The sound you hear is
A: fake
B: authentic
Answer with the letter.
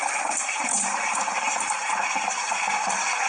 A